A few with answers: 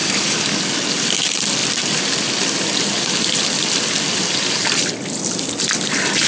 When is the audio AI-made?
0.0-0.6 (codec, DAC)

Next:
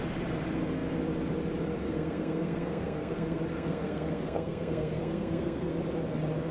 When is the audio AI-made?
1.8-5.7 (codec, SNAC)

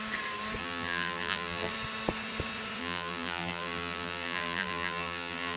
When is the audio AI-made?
0.6-1.7 (vocoder, BigVGAN v2); 2.8-5.6

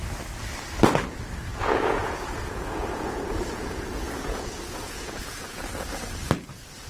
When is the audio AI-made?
1.5-5.6 (vocoder, Vocos)

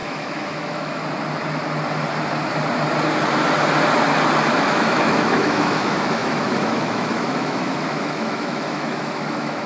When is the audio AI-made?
0.0-1.0 (autoencoder, DAC-VAE); 4.5-9.7

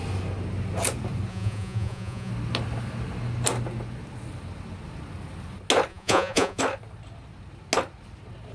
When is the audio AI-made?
1.3-2.3 (vocoder, Vocos); 5.9-6.6